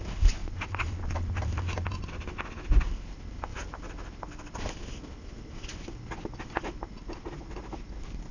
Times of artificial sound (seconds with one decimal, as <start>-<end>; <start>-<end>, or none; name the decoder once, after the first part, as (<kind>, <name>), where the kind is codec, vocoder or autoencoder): 0.4-1.3 (vocoder, Vocos)